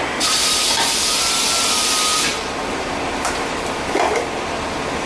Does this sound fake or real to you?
real